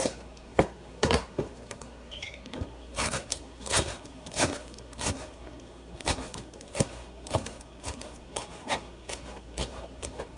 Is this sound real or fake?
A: fake